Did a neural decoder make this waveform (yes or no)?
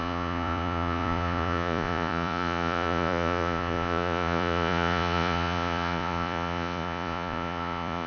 yes